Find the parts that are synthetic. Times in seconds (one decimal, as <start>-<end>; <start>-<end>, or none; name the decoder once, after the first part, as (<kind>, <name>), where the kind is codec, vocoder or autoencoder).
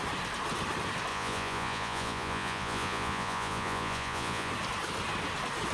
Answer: 1.1-4.5 (vocoder, Vocos)